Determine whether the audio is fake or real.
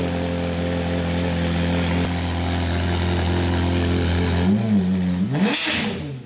real